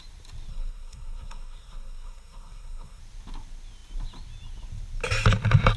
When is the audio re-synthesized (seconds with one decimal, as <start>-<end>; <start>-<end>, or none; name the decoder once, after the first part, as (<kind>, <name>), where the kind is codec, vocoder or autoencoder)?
0.5-3.0 (codec, SNAC)